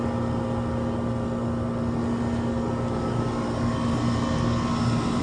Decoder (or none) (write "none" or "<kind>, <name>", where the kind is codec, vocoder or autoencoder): none